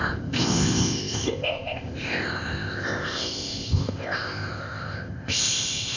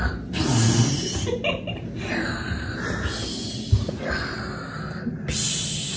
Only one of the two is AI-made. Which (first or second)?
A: first